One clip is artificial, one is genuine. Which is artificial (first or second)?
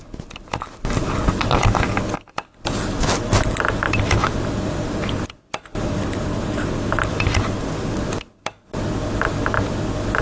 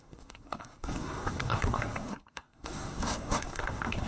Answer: second